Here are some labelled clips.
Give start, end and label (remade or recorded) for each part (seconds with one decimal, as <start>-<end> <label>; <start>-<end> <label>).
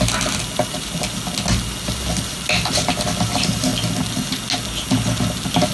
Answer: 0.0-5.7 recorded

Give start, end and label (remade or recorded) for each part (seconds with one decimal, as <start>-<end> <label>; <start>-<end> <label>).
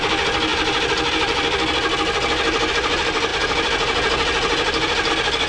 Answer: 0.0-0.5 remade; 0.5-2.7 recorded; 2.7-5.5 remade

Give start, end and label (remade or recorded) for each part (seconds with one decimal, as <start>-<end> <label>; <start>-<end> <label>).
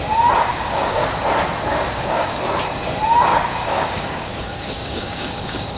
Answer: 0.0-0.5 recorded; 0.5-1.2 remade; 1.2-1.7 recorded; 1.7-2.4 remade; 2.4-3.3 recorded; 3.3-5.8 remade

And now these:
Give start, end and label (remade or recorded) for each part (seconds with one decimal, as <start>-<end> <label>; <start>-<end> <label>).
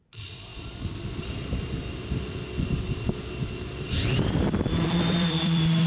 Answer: 0.0-0.5 remade; 0.5-3.7 recorded; 3.7-5.9 remade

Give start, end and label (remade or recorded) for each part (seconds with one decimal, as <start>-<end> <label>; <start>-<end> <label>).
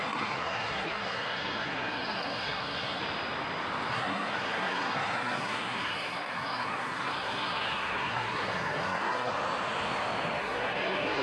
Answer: 0.0-3.0 remade; 3.0-3.9 recorded; 3.9-9.3 remade; 9.3-10.4 recorded; 10.4-11.2 remade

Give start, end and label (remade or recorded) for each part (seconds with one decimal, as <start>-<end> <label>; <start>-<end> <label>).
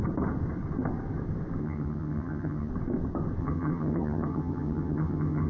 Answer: 0.0-1.6 recorded; 1.6-2.7 remade; 2.7-3.4 recorded; 3.4-5.5 remade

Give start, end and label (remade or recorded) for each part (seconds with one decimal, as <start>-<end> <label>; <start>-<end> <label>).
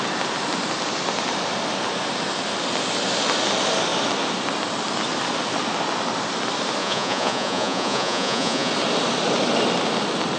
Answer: 0.0-6.8 recorded; 6.8-8.7 remade; 8.7-10.4 recorded